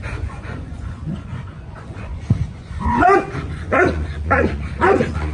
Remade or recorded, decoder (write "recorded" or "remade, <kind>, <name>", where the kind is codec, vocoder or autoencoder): remade, vocoder, Vocos